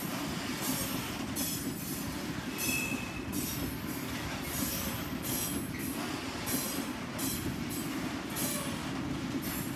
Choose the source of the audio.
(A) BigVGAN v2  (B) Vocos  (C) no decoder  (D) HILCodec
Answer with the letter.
C